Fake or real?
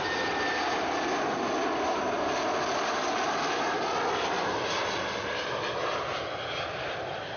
real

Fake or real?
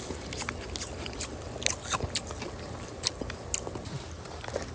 real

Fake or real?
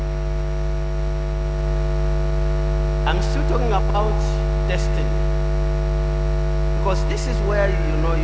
real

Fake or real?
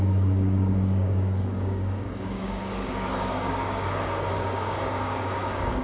fake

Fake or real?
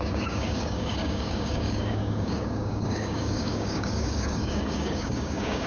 fake